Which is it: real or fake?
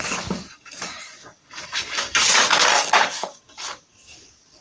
fake